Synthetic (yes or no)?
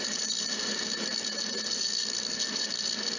no